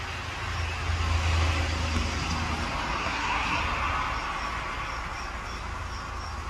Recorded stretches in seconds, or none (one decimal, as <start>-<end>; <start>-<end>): 0.0-3.0; 3.6-6.5